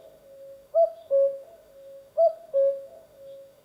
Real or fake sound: fake